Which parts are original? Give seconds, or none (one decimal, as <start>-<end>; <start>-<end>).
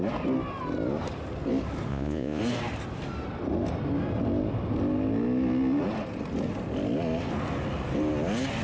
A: 0.0-1.9; 2.4-8.6